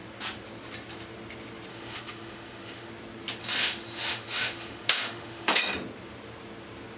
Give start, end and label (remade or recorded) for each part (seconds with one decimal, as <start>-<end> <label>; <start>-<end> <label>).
0.0-1.7 recorded; 1.7-2.9 remade; 2.9-3.4 recorded; 3.4-5.6 remade; 5.6-7.0 recorded